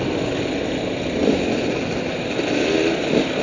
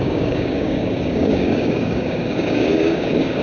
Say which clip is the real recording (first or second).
first